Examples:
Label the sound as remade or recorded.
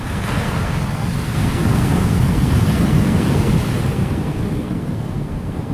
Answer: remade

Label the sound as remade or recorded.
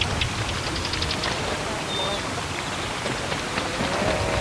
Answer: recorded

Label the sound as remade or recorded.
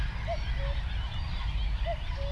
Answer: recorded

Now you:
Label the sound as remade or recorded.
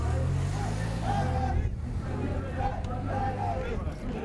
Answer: recorded